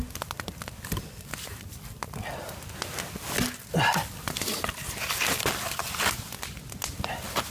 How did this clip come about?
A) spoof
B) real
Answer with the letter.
B